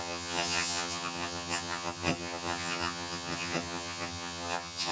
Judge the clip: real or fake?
fake